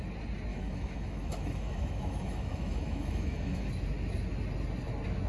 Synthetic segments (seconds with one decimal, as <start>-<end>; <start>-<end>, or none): 0.5-3.7

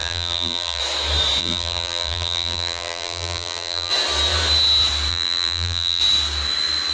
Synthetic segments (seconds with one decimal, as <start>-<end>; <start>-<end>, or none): 0.0-0.8; 1.4-3.9; 5.1-6.0

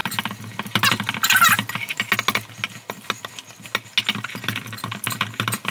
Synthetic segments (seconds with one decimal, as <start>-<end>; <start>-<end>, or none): none

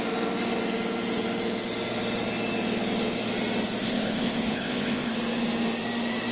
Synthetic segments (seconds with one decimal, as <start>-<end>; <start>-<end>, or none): 3.8-5.1

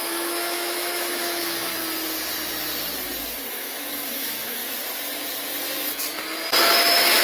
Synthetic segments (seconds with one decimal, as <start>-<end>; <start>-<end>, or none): 0.0-1.7; 3.5-4.6; 6.6-7.2

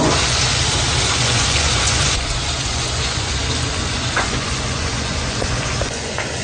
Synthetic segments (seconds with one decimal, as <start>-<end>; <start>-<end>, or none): 0.0-0.6; 1.1-6.4

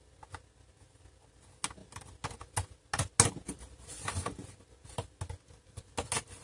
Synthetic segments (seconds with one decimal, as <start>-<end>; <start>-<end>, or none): none